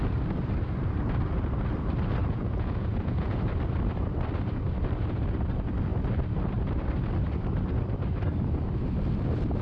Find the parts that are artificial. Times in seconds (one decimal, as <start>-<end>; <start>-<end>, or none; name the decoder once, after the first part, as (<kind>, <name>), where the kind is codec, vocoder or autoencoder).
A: 2.2-3.4 (vocoder, Vocos)